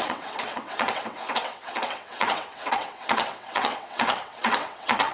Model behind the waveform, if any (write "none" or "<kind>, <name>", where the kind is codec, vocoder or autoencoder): vocoder, WaveNeXt